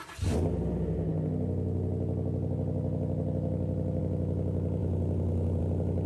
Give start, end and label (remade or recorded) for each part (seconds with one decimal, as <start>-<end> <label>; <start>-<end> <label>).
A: 0.0-6.1 recorded